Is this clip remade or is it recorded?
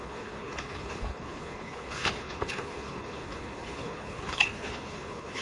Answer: remade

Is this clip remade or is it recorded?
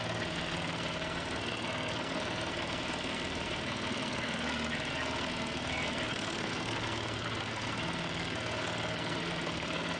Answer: remade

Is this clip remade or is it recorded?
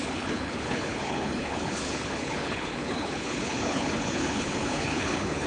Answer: remade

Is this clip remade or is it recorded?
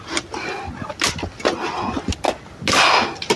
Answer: recorded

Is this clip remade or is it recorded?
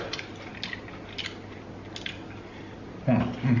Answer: recorded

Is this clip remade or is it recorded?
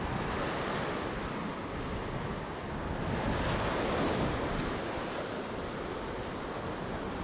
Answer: recorded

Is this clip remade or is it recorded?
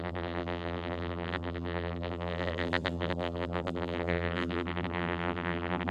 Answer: remade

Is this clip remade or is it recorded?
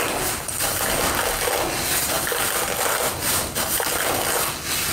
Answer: recorded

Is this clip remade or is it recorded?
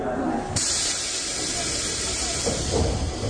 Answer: recorded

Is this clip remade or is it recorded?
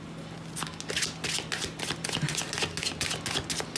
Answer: recorded